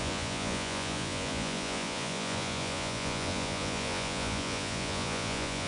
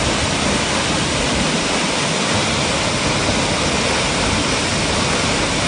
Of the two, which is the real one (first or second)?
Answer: second